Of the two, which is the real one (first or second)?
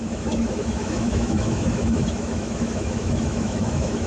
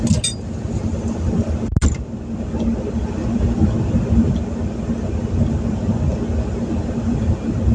second